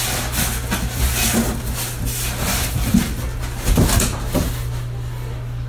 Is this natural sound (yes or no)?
yes